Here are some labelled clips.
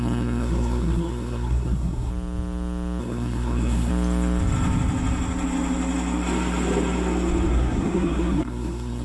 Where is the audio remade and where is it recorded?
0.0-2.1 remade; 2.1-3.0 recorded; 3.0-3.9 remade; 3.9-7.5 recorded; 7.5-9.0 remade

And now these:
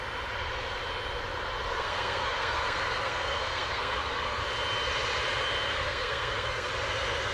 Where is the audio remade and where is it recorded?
0.0-1.7 recorded; 1.7-4.4 remade; 4.4-5.7 recorded; 5.7-6.7 remade; 6.7-7.3 recorded

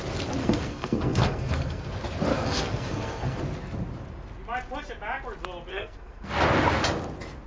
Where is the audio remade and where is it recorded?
0.0-0.4 recorded; 0.4-1.9 remade; 1.9-2.3 recorded; 2.3-3.4 remade; 3.4-5.7 recorded; 5.7-6.3 remade; 6.3-7.5 recorded